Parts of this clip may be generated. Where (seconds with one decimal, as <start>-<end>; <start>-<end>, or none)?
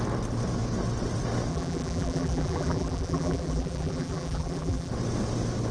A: 1.5-4.9